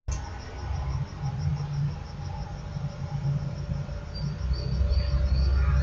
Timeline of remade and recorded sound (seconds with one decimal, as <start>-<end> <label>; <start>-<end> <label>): 0.0-2.5 recorded; 2.5-4.2 remade; 4.2-5.8 recorded